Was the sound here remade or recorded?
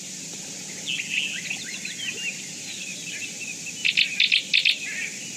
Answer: recorded